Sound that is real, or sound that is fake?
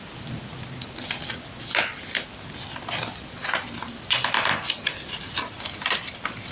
real